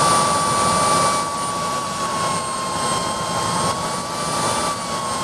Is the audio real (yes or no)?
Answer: yes